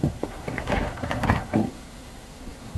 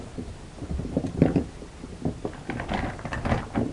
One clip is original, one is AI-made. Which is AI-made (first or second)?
first